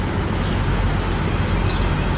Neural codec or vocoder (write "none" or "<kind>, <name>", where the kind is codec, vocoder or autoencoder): none